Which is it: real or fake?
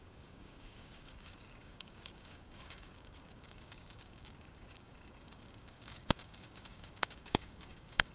fake